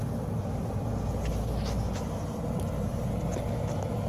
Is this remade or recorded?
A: recorded